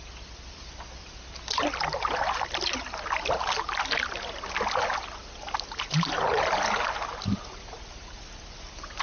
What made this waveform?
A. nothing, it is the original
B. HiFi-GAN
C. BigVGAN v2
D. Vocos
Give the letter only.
A